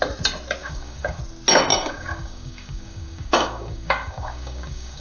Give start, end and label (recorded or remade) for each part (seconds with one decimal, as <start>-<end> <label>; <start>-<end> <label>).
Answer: 0.0-0.6 recorded; 0.6-1.2 remade; 1.2-1.7 recorded; 1.7-5.0 remade